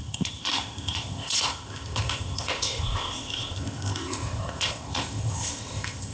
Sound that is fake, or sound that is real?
fake